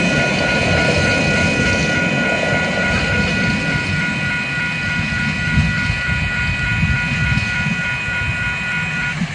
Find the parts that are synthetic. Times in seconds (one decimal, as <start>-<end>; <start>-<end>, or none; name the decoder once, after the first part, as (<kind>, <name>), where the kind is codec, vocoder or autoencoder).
none